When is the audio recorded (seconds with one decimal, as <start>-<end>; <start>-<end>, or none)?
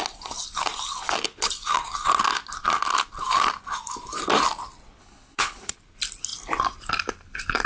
0.0-5.0; 5.7-7.7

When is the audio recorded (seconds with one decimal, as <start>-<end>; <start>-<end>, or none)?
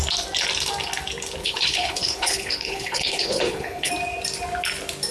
0.0-1.4; 3.9-5.1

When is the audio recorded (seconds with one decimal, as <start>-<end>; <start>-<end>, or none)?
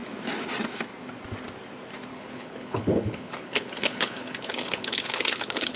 0.0-2.1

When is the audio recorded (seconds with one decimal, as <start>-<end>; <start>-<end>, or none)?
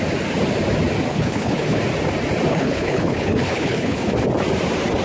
0.0-1.1; 1.8-2.5; 4.1-5.0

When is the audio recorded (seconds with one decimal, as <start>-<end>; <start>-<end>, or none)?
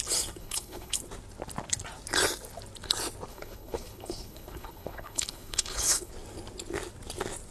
0.0-0.4; 1.0-3.3; 6.1-7.5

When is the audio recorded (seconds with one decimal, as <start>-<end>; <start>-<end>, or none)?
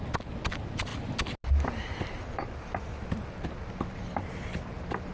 0.0-5.1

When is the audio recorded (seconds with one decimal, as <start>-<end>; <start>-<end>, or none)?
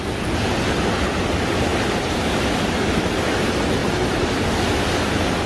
0.0-5.5